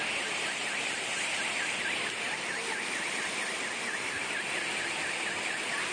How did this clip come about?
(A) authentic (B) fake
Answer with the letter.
A